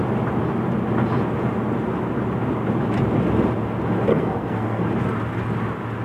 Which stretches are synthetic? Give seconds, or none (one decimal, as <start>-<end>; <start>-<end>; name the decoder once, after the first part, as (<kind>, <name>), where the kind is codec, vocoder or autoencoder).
4.1-4.8 (codec, SNAC)